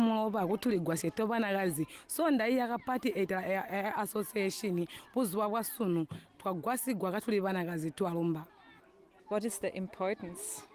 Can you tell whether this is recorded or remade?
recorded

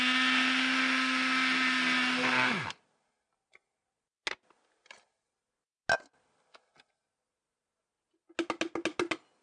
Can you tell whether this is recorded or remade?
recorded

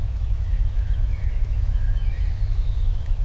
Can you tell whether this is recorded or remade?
remade